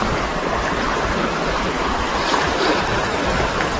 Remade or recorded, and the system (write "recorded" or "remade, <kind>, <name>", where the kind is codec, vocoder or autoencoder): remade, vocoder, BigVGAN v2